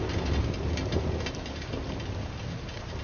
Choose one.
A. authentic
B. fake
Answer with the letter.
A